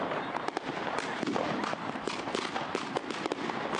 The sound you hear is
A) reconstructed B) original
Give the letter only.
B